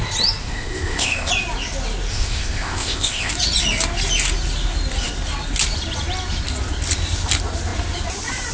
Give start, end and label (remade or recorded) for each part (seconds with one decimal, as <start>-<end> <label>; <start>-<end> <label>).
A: 0.0-0.4 recorded; 0.4-1.3 remade; 1.3-2.1 recorded; 2.1-3.3 remade; 3.3-8.5 recorded